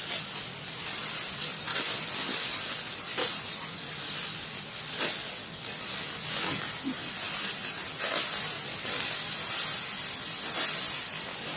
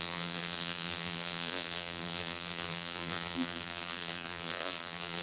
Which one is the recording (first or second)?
first